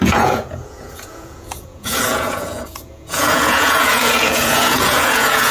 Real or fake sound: fake